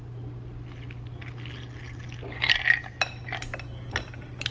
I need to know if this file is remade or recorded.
recorded